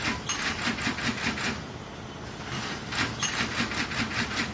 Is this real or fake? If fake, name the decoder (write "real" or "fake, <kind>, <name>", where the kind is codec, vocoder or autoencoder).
real